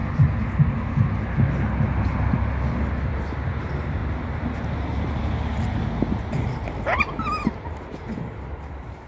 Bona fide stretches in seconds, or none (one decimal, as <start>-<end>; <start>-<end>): 0.0-9.1